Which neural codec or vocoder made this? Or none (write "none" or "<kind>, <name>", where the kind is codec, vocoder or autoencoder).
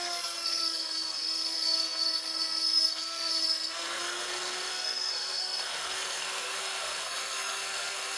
codec, SNAC